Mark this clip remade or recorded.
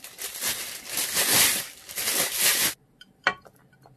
recorded